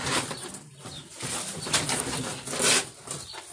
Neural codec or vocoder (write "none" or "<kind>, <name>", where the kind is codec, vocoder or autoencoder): none